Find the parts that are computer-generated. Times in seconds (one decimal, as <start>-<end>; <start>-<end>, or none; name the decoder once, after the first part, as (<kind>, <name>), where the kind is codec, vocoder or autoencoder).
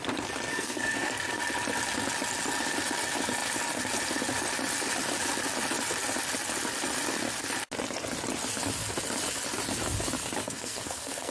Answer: 0.5-1.4 (codec, SNAC); 10.4-11.3